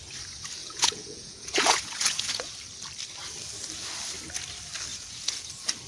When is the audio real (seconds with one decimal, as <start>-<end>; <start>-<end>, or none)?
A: 0.0-0.6; 2.5-4.9; 5.5-5.9